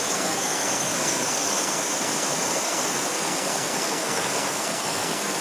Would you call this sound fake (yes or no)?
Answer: yes